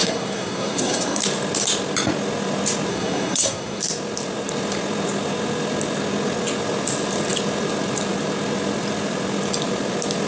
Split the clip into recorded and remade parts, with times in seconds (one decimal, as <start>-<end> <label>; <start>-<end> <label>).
0.0-1.2 remade; 1.2-2.9 recorded; 2.9-3.8 remade; 3.8-10.3 recorded